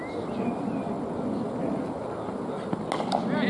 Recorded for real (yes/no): yes